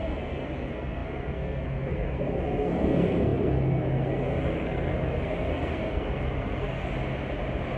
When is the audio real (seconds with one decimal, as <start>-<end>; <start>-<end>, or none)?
6.9-7.8